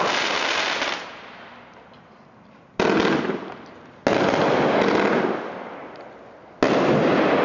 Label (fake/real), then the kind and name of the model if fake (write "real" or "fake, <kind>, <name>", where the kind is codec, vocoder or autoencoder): real